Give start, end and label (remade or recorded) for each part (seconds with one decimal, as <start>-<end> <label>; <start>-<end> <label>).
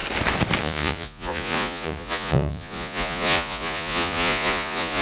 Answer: 0.0-0.6 recorded; 0.6-5.0 remade